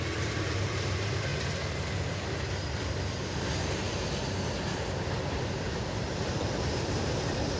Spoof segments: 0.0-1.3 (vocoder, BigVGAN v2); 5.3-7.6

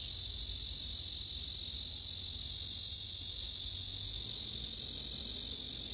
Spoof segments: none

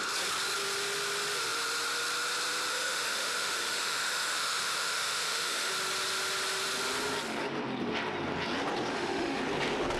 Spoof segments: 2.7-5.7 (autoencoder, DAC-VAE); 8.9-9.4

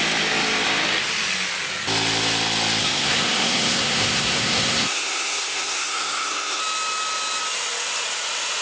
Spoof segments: 2.8-6.6 (codec, SNAC)

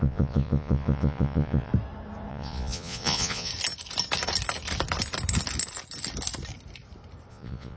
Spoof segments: 0.0-1.7 (vocoder, Vocos); 2.3-3.5; 7.3-7.8

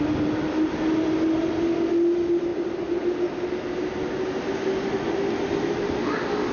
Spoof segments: none